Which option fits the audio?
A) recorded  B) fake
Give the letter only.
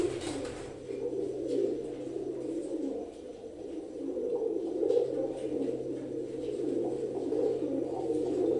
A